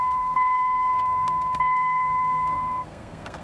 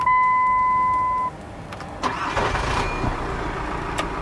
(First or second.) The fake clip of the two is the first